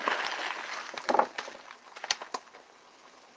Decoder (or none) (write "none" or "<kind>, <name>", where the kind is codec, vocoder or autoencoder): none